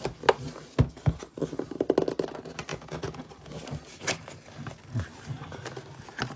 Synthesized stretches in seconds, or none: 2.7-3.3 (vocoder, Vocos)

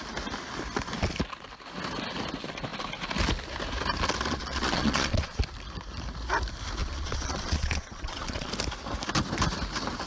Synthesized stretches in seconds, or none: 4.3-5.4 (vocoder, Vocos); 6.8-8.5